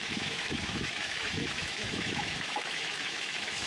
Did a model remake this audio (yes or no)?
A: yes